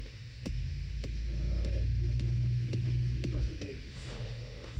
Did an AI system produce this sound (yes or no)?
yes